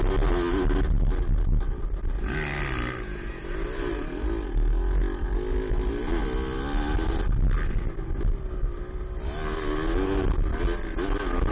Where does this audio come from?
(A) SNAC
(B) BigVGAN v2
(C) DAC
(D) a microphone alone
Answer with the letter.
D